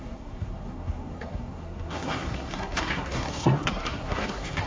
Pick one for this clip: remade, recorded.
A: remade